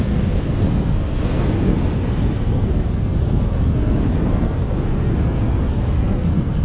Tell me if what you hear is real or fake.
fake